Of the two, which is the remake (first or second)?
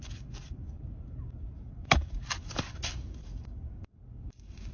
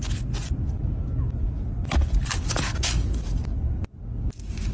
first